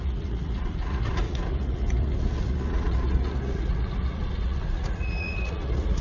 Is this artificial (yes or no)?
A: yes